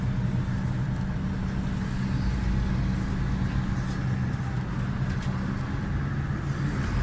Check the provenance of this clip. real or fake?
real